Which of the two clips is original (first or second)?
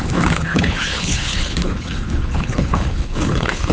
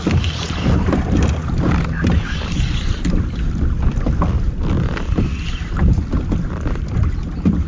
second